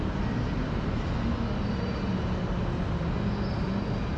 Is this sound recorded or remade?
recorded